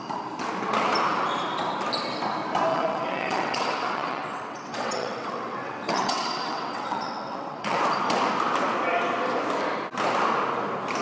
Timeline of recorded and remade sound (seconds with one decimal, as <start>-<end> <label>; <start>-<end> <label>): 0.0-2.7 recorded; 2.7-7.8 remade; 7.8-11.0 recorded